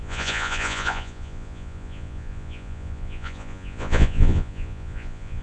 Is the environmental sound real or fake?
fake